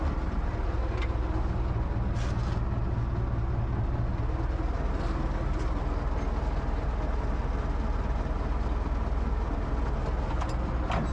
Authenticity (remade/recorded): recorded